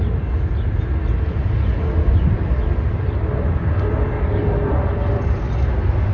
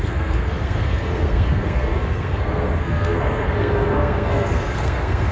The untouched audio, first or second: first